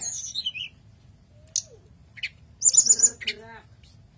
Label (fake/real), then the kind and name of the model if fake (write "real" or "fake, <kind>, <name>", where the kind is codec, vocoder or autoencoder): real